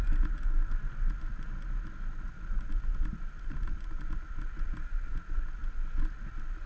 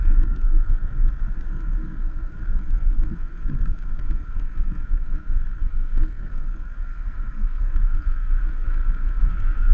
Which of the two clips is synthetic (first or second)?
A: second